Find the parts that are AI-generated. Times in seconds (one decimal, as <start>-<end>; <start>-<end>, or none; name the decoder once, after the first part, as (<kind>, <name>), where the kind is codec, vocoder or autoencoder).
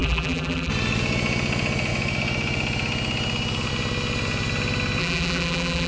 0.0-0.7 (vocoder, BigVGAN v2); 5.0-5.9